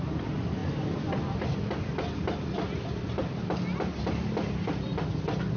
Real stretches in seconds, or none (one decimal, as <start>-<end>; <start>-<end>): 0.0-5.6